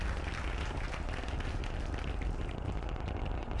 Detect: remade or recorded recorded